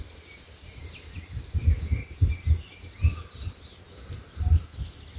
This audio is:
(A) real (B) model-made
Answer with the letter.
A